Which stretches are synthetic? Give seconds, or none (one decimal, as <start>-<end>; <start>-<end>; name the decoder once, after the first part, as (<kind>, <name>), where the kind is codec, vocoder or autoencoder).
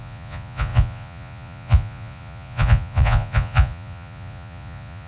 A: 0.0-5.1 (vocoder, Vocos)